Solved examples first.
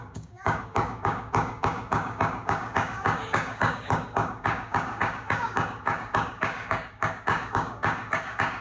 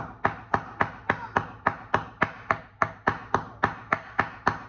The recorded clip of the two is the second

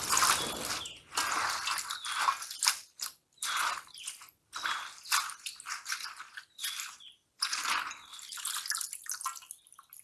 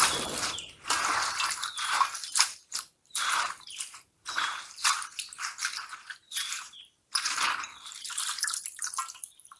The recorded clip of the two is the first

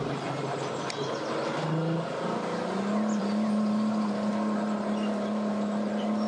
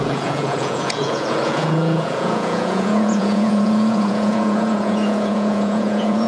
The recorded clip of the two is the first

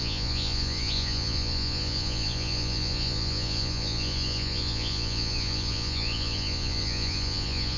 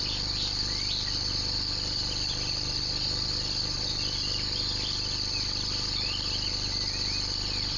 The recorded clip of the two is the second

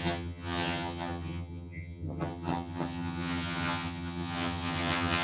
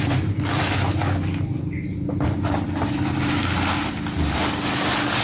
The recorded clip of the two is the second